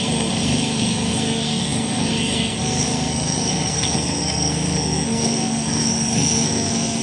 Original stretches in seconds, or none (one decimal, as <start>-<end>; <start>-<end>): none